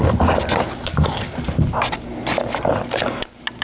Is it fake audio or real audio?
real